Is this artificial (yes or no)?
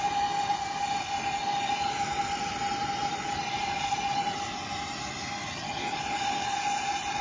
no